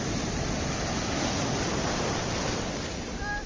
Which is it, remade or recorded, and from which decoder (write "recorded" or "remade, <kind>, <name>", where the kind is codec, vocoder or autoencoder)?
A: recorded